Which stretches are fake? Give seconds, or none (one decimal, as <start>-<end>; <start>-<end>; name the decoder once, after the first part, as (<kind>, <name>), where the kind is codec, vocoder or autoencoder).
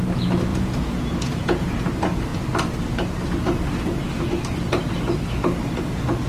0.5-1.8 (vocoder, Vocos)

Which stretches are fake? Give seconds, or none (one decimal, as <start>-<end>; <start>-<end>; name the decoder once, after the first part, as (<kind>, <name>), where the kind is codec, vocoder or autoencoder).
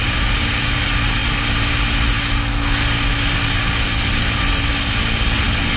none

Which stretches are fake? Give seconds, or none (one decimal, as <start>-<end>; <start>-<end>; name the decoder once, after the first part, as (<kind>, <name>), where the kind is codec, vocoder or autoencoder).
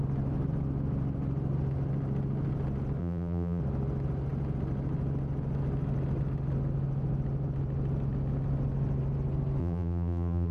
3.0-3.6 (vocoder, BigVGAN v2); 9.6-10.5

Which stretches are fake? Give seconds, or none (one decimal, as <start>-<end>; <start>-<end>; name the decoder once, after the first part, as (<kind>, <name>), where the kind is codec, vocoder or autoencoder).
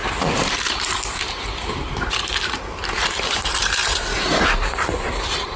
0.0-5.6 (vocoder, BigVGAN v2)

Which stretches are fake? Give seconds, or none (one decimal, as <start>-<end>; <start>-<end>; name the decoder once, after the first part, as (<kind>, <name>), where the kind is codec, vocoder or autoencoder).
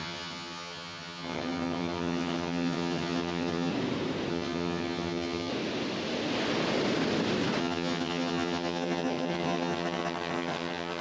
0.0-3.7 (vocoder, HiFi-GAN); 4.3-5.5; 7.6-11.0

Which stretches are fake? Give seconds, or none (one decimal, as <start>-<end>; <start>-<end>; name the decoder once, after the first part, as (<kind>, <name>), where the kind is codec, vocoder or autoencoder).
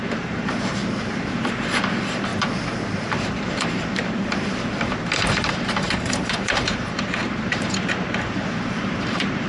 0.0-0.8 (vocoder, BigVGAN v2); 1.5-2.3; 3.1-9.5